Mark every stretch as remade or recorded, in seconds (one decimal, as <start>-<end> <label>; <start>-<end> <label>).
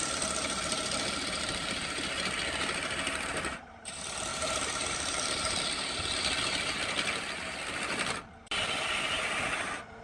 0.0-10.0 recorded